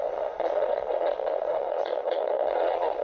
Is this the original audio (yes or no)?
no